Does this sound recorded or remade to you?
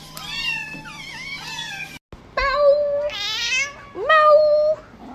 recorded